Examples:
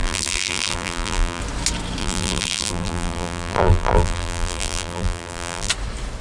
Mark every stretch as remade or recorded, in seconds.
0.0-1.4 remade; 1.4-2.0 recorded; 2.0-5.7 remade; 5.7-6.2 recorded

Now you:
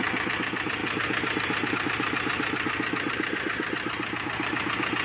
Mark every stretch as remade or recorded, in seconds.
0.0-5.0 recorded

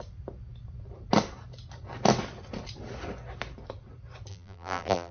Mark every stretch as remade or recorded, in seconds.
0.0-4.3 recorded; 4.3-5.1 remade

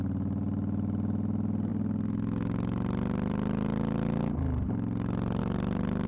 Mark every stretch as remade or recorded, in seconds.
0.0-6.1 recorded

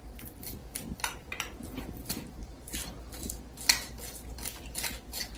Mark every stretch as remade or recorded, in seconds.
0.0-2.4 recorded; 2.4-3.3 remade; 3.3-5.4 recorded